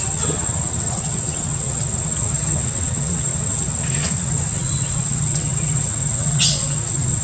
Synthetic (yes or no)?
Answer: yes